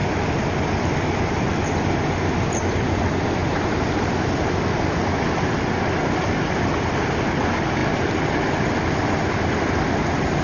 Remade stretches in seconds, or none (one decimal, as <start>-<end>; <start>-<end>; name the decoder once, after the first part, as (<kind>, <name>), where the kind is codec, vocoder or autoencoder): none